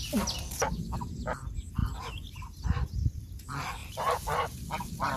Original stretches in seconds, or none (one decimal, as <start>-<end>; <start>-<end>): 0.0-1.8; 3.4-3.8; 4.4-5.2